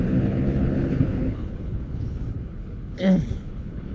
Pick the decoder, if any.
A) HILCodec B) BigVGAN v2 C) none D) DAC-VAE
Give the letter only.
A